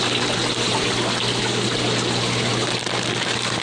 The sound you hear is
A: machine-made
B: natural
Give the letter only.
B